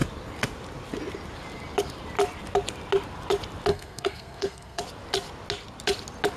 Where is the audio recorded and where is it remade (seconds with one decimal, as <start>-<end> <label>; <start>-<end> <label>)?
0.0-3.7 recorded; 3.7-4.8 remade; 4.8-6.4 recorded